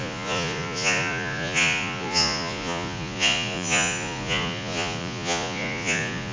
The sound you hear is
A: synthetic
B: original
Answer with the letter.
A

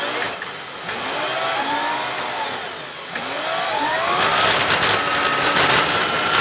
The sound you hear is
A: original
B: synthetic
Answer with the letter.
A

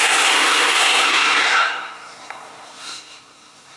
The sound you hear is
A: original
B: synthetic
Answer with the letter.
B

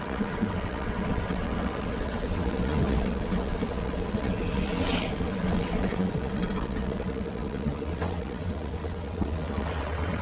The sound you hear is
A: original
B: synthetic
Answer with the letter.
B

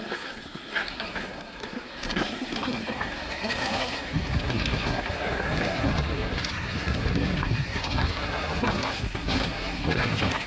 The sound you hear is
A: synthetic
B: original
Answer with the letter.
A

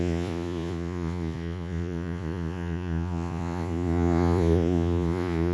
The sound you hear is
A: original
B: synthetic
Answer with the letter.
B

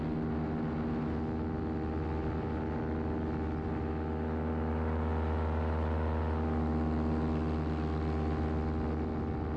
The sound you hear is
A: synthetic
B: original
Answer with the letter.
B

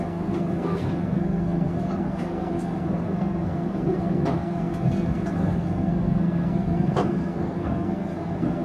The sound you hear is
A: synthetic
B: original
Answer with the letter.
A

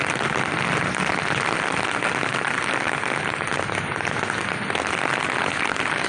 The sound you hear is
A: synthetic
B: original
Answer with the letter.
B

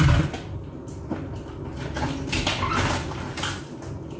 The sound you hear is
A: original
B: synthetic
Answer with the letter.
A